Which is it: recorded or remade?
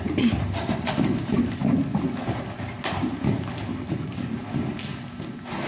recorded